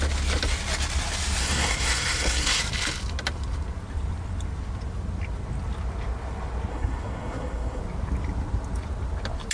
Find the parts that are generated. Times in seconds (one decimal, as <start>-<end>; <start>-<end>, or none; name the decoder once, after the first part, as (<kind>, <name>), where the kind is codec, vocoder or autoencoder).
1.4-2.6 (codec, SNAC); 6.7-7.8

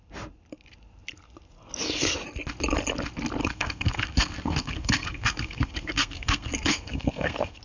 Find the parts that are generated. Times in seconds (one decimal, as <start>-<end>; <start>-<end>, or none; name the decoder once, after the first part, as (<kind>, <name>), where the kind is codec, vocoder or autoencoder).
3.4-7.6 (codec, SNAC)

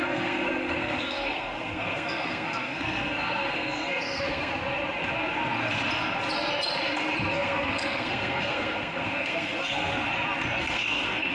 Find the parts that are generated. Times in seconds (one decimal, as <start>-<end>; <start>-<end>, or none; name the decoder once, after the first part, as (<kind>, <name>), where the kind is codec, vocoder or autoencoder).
0.0-4.5 (codec, SNAC); 7.3-9.9; 10.6-11.3